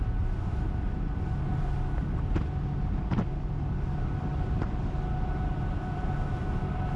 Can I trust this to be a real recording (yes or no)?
yes